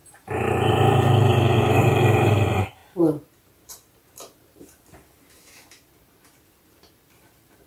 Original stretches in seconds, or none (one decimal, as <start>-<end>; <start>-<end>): none